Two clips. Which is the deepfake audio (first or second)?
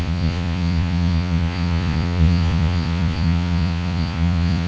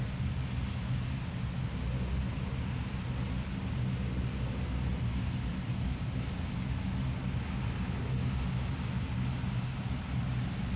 first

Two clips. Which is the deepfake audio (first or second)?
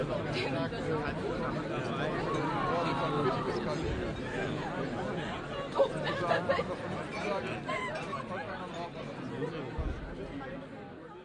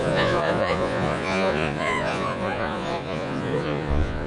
second